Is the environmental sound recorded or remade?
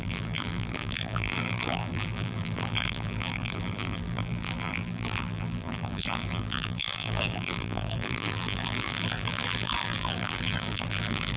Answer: remade